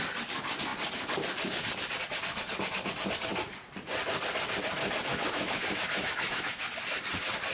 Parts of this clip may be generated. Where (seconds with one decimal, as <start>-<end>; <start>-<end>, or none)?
5.1-6.7